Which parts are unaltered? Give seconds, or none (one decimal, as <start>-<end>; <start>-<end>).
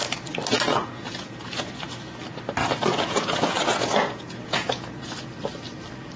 0.0-0.7; 1.9-2.6; 5.1-6.2